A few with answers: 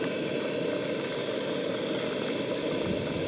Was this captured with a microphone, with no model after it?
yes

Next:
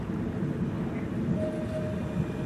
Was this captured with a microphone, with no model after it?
yes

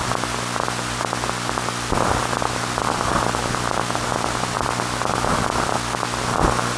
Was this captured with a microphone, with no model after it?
yes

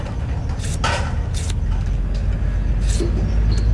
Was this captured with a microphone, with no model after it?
yes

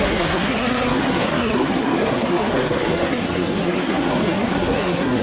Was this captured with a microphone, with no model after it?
no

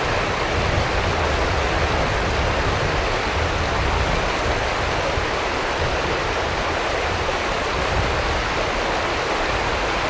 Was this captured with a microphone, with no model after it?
yes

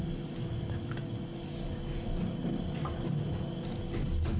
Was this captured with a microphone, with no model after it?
yes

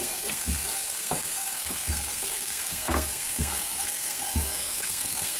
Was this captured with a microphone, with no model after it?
no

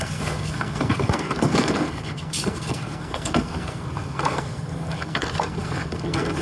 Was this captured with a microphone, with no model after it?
no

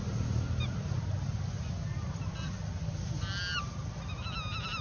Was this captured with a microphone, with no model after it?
yes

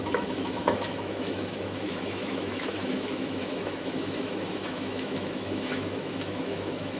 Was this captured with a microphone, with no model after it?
no